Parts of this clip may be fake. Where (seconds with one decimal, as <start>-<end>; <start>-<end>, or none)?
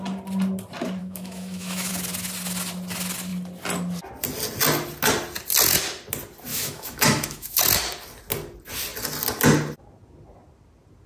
1.0-1.9; 6.5-7.6